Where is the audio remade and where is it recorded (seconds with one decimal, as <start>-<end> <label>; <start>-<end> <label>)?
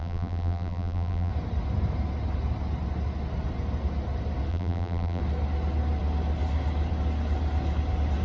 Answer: 0.0-1.3 remade; 1.3-4.5 recorded; 4.5-5.2 remade; 5.2-8.2 recorded